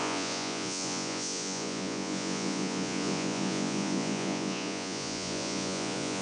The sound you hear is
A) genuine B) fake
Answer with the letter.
B